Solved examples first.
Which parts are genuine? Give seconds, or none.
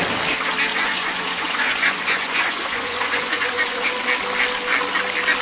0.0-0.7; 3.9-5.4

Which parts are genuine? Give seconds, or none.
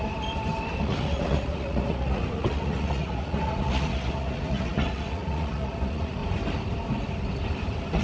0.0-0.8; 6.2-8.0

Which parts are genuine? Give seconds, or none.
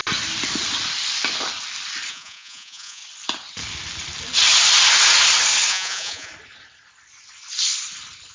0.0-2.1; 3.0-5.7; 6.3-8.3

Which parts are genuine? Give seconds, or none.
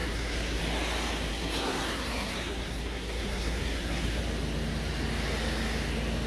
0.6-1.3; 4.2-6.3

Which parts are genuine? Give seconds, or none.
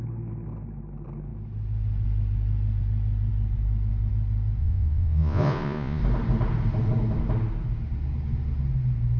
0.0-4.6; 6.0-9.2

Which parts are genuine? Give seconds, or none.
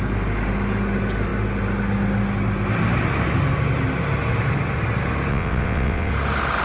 0.0-5.3; 6.1-6.6